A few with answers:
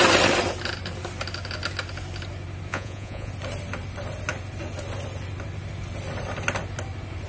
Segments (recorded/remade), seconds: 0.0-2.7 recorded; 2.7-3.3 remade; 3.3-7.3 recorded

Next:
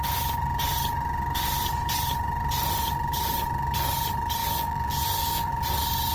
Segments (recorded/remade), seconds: 0.0-4.4 recorded; 4.4-5.5 remade; 5.5-6.1 recorded

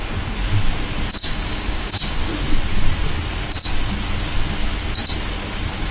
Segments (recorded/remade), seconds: 0.0-1.2 recorded; 1.2-2.3 remade; 2.3-5.9 recorded